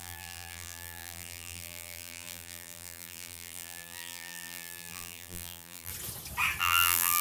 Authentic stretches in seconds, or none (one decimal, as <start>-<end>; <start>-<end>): 5.9-6.6

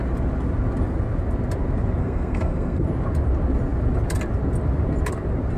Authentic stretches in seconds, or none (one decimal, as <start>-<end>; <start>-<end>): 0.0-2.0; 2.8-5.6

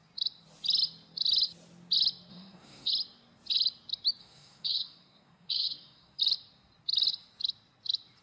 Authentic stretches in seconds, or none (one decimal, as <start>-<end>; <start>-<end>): 0.0-2.3; 2.9-4.2; 6.2-8.2

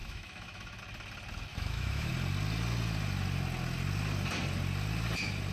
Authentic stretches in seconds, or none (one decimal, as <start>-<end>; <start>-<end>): 0.8-1.5; 2.1-5.5

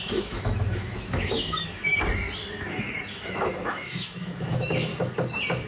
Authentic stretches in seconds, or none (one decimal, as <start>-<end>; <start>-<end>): 1.9-2.6; 4.9-5.7

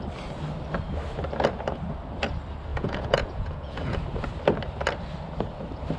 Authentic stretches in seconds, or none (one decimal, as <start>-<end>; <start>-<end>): 0.0-2.7; 4.0-6.0